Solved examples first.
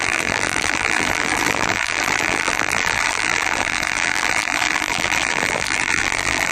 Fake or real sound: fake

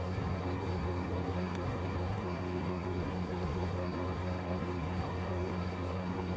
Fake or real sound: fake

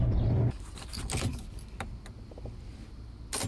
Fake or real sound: real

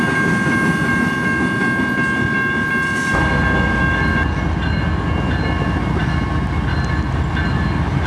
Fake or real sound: real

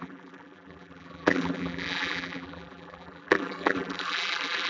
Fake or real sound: fake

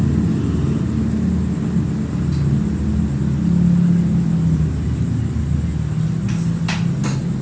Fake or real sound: real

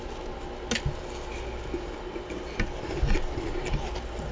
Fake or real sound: real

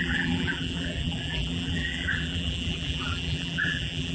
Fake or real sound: fake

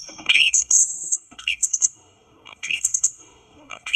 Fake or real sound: fake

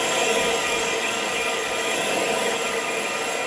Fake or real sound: fake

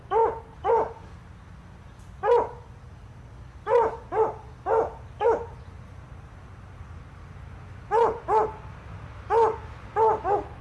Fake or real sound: real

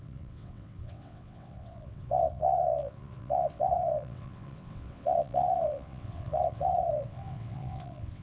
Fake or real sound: fake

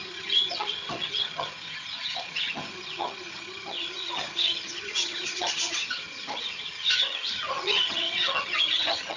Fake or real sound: fake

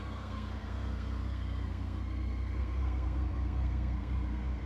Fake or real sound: fake